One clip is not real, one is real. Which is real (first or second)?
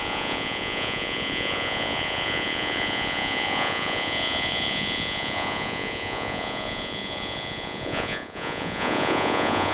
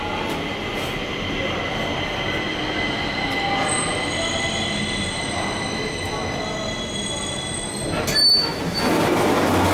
second